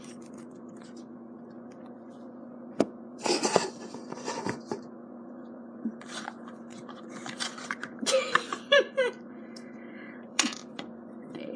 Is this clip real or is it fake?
fake